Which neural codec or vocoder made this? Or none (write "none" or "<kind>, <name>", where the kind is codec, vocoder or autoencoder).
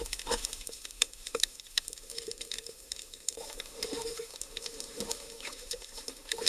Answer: autoencoder, DAC-VAE